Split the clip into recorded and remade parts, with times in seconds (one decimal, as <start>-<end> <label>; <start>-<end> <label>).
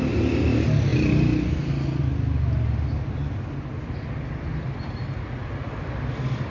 0.0-6.5 recorded